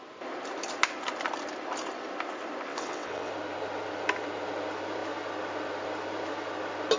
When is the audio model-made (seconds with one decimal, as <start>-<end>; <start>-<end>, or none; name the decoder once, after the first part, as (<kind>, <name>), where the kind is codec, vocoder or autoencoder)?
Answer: 2.7-3.3 (vocoder, WaveNeXt)